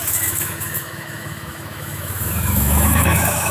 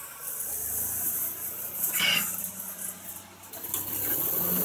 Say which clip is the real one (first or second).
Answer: second